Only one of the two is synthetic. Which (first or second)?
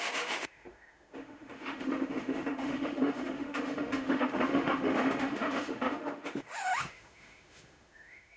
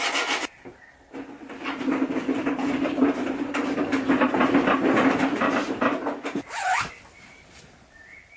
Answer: first